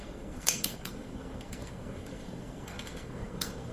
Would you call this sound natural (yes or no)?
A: no